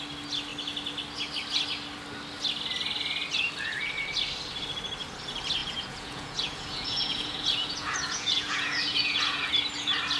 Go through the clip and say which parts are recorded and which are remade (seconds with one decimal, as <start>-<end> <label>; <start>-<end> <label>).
0.0-5.6 recorded; 5.6-9.5 remade; 9.5-10.2 recorded